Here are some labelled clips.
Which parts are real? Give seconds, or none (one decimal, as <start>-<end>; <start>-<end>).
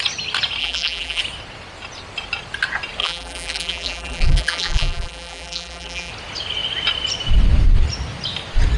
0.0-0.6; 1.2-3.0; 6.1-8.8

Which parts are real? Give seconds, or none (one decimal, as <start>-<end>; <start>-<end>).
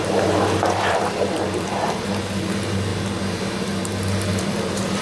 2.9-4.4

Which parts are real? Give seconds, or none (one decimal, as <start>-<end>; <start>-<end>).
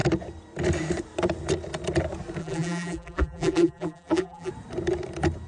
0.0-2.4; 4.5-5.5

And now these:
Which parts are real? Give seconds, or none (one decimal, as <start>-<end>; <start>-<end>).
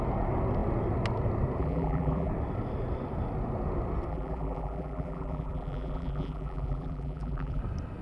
0.0-1.6; 2.3-4.1; 7.6-8.0